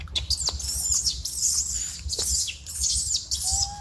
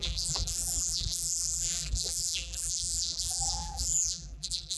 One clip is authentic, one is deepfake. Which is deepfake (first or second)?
second